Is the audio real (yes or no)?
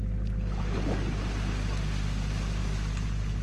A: yes